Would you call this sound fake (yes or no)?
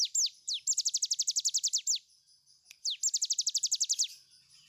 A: no